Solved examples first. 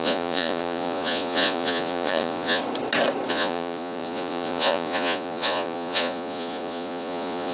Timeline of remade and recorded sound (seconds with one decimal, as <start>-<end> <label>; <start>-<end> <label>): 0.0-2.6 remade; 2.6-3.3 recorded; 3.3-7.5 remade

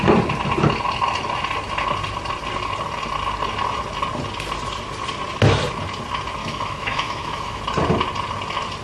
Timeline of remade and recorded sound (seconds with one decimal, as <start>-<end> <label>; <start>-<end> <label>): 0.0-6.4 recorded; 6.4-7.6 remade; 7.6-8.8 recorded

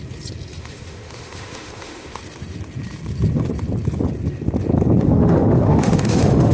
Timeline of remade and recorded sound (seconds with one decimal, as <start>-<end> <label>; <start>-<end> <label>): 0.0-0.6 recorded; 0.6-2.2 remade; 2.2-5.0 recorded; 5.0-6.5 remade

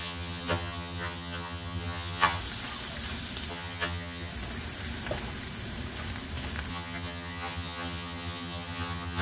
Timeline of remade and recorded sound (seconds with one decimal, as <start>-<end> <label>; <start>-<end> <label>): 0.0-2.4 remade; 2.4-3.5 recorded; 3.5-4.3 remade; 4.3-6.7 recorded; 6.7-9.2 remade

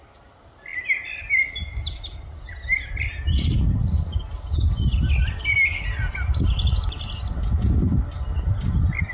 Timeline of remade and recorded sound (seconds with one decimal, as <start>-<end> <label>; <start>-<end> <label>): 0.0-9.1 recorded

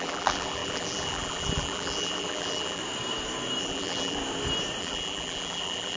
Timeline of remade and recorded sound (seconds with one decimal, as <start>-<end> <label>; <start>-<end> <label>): 0.0-2.8 remade; 2.8-3.6 recorded; 3.6-4.2 remade; 4.2-4.8 recorded; 4.8-6.0 remade

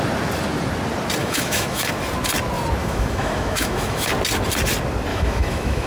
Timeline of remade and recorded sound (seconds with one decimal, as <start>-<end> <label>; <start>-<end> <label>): 0.0-1.2 recorded; 1.2-1.9 remade; 1.9-2.8 recorded; 2.8-4.1 remade; 4.1-5.1 recorded; 5.1-5.9 remade

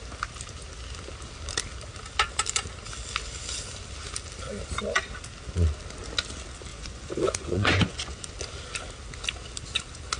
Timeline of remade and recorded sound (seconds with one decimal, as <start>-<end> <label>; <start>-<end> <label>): 0.0-6.7 recorded; 6.7-8.3 remade; 8.3-10.2 recorded